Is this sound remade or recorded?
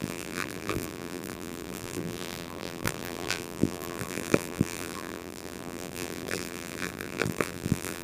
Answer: remade